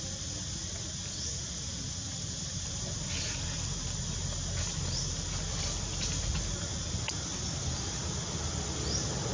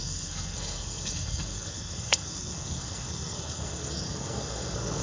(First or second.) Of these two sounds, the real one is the first